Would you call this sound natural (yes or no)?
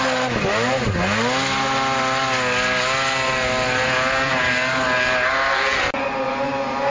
yes